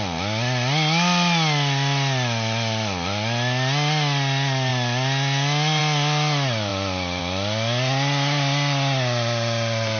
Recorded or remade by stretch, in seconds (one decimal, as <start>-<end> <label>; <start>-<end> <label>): 0.0-10.0 recorded